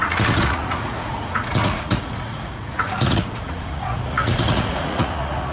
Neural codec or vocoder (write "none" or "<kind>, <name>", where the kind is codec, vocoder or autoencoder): vocoder, Vocos